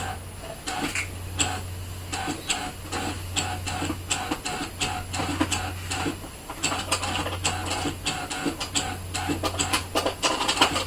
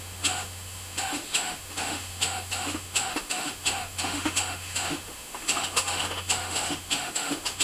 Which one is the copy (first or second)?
second